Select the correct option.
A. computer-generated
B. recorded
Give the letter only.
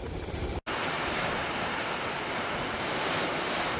B